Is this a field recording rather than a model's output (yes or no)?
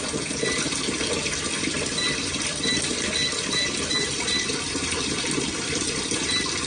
no